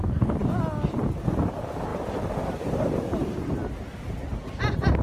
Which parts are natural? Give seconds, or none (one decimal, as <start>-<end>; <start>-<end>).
0.0-5.0